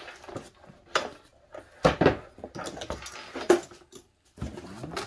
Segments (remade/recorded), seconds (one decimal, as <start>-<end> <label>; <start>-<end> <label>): 0.0-5.1 recorded